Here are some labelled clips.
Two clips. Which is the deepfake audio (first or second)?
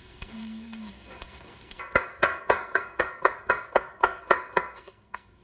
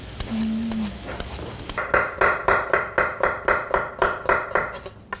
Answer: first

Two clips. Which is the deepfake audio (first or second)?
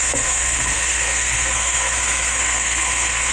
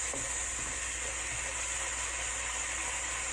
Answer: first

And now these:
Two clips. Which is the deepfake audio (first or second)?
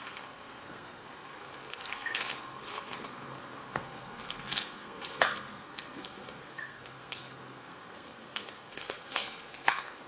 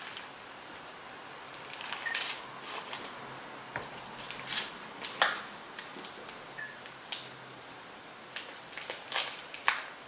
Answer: first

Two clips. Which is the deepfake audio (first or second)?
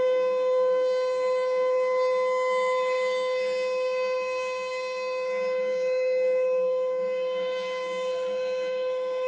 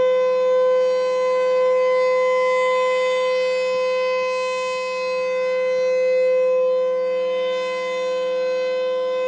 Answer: first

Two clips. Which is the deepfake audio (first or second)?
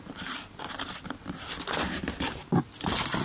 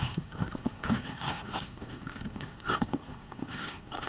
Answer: second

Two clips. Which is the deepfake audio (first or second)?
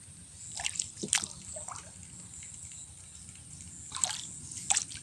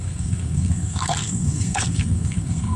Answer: second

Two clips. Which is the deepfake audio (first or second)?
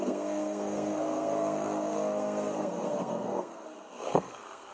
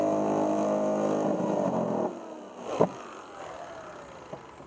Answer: first